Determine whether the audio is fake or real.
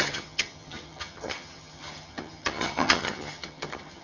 fake